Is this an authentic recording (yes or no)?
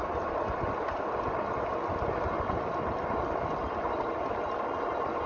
yes